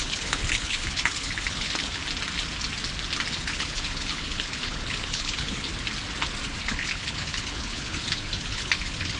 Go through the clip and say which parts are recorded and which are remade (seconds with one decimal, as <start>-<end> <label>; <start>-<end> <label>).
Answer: 0.0-2.0 remade; 2.0-3.3 recorded; 3.3-5.7 remade; 5.7-6.6 recorded; 6.6-9.2 remade